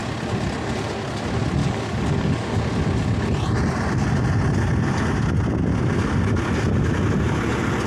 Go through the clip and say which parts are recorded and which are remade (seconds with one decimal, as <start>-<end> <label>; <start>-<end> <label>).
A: 0.0-1.6 recorded; 1.6-2.6 remade; 2.6-7.9 recorded